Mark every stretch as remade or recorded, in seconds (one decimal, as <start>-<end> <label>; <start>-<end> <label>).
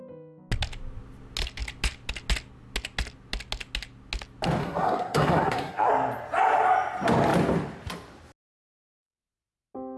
0.0-4.6 recorded; 4.6-5.9 remade; 5.9-10.0 recorded